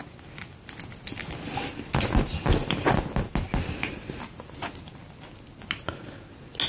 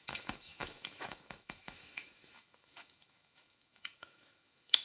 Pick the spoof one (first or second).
second